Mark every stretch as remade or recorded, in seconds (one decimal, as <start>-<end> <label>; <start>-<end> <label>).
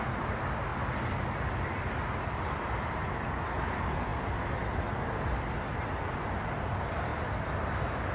0.0-8.1 recorded